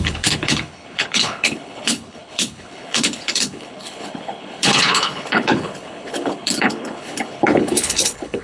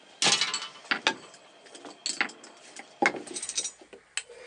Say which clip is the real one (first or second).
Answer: second